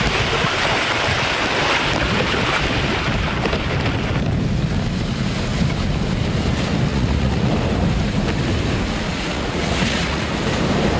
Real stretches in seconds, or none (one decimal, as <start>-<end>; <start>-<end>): 0.0-6.9; 7.5-9.1; 10.3-11.0